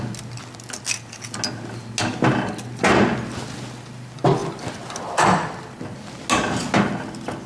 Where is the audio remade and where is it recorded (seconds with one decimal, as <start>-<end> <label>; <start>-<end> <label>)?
0.0-7.5 recorded